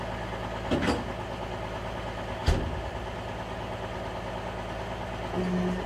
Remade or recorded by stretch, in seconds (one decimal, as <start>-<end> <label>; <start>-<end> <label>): 0.0-5.9 recorded